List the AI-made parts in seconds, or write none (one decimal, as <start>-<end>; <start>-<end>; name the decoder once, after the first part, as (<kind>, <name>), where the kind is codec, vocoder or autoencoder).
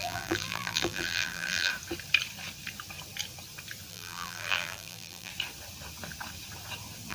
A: 0.0-1.7 (vocoder, BigVGAN v2); 3.9-5.3